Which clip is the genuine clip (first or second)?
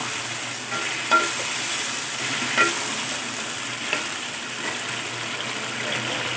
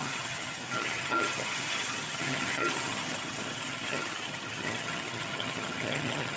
first